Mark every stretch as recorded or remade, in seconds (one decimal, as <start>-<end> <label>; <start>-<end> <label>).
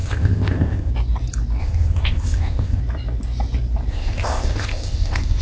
0.0-0.9 remade; 0.9-1.6 recorded; 1.6-2.8 remade; 2.8-3.9 recorded; 3.9-5.4 remade